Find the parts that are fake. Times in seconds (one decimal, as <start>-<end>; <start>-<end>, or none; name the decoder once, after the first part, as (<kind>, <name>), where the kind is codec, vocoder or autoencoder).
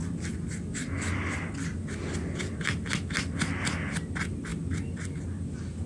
none